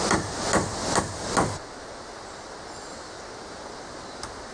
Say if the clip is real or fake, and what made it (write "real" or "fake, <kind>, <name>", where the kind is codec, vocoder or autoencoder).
real